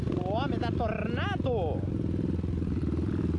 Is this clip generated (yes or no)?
no